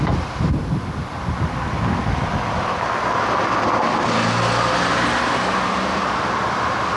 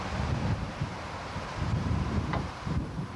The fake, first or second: second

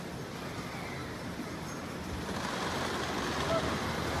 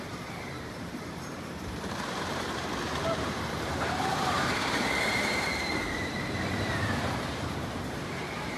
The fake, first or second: second